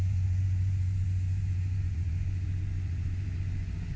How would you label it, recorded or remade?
remade